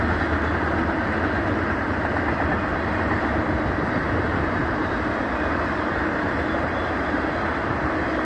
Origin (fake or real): real